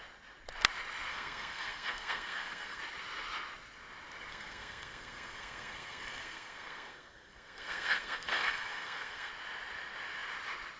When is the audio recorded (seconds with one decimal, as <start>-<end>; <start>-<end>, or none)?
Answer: 0.0-1.1; 2.8-4.3; 9.3-10.8